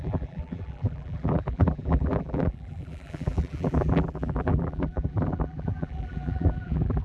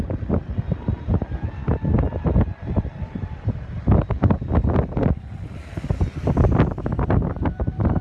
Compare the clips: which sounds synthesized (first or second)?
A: first